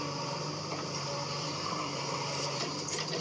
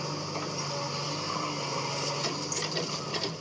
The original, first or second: second